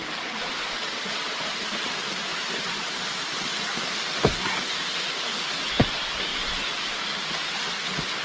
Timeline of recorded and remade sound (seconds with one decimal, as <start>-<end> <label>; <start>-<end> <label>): 0.0-2.3 recorded; 2.3-3.0 remade; 3.0-6.3 recorded; 6.3-7.0 remade; 7.0-8.2 recorded